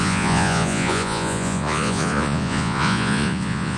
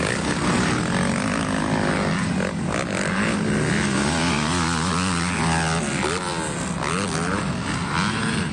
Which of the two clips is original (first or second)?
second